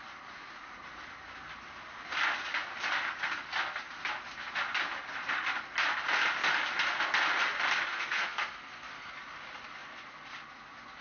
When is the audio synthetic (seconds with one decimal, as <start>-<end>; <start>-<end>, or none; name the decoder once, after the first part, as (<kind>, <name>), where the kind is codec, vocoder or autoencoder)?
7.9-9.1 (codec, SNAC)